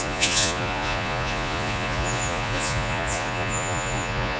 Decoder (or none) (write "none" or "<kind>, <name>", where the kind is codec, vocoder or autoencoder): vocoder, Vocos